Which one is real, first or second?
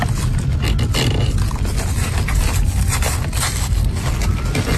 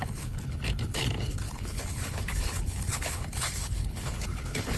first